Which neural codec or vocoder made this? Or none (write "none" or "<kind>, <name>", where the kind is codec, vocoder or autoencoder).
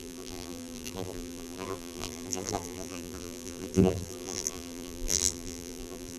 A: vocoder, BigVGAN v2